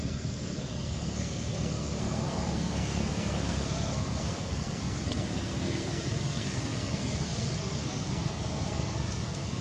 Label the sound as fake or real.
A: fake